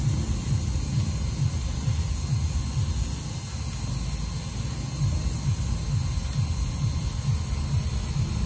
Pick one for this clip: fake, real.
real